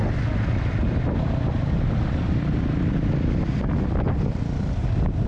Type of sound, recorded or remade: recorded